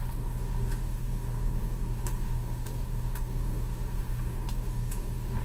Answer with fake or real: fake